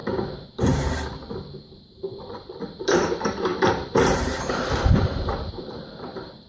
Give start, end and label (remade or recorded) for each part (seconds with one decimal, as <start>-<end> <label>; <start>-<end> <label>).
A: 0.0-6.5 remade